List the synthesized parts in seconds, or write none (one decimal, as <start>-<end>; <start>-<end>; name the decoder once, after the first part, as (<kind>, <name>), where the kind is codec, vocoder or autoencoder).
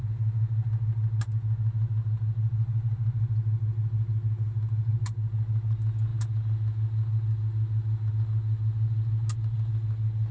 none